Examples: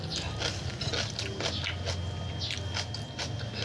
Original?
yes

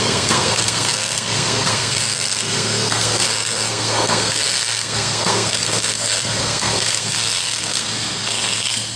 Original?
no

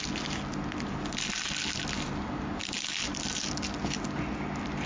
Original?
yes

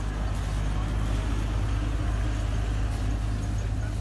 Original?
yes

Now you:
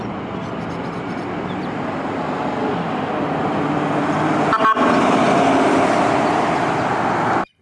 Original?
yes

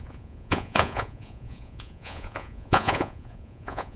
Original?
no